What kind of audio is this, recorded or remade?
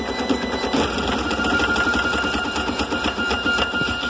recorded